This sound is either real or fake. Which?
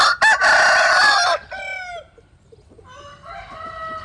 real